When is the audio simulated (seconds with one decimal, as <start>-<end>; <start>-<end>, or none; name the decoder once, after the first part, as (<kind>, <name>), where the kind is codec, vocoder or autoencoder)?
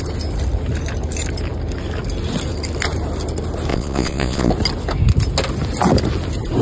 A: 3.7-4.5 (vocoder, Vocos)